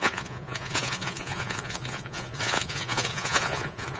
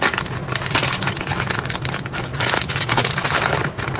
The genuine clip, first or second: second